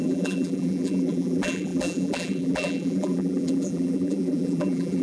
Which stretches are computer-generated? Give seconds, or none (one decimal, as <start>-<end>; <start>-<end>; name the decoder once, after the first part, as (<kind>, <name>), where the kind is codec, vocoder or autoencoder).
0.0-5.0 (vocoder, BigVGAN v2)

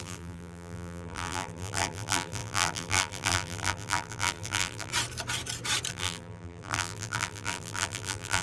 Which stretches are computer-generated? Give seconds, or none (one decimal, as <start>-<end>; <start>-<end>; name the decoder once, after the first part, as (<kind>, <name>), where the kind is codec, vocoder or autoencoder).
0.0-4.9 (vocoder, BigVGAN v2); 5.9-8.4

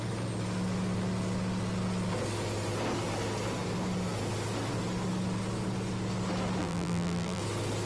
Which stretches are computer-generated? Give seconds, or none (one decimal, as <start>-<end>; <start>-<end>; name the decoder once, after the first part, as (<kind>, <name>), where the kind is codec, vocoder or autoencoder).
6.6-7.4 (vocoder, BigVGAN v2)

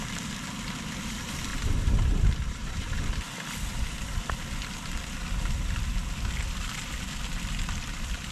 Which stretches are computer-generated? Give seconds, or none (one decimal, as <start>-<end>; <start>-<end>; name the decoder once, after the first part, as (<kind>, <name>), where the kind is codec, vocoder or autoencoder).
1.5-2.9 (vocoder, BigVGAN v2)